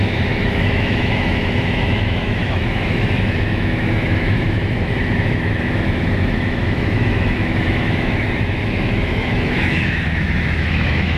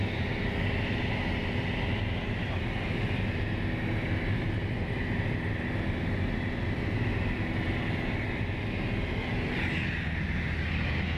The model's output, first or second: first